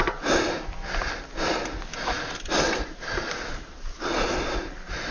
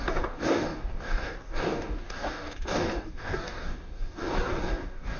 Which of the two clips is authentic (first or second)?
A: first